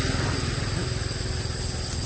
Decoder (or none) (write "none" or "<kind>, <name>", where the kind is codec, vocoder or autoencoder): none